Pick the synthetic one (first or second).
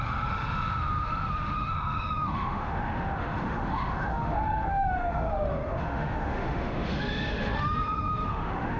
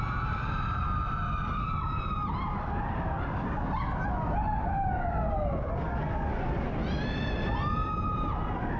first